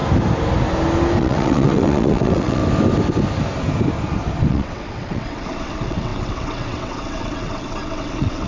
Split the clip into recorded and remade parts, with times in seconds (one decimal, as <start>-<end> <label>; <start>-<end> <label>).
0.0-1.2 recorded; 1.2-2.6 remade; 2.6-4.5 recorded; 4.5-8.5 remade